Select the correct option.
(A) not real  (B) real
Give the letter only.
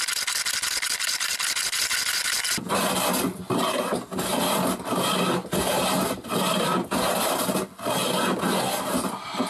B